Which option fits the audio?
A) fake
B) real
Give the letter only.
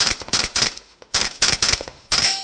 A